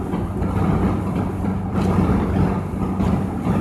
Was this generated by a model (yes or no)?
yes